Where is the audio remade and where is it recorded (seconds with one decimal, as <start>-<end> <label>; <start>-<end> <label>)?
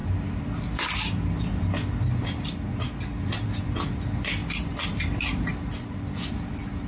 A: 0.0-4.4 recorded; 4.4-6.0 remade; 6.0-6.9 recorded